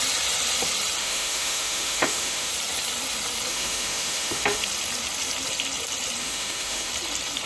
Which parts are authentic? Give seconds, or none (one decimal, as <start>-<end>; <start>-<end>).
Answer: 0.0-1.0; 2.5-3.5; 4.6-6.2; 6.9-7.5